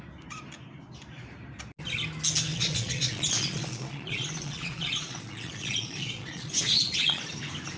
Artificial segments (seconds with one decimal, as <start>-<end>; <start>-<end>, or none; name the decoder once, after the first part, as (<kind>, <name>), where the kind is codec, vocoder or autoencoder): 2.5-7.2 (vocoder, Vocos)